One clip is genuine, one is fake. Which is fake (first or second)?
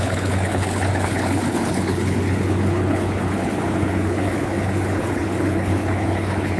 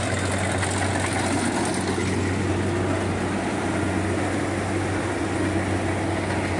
first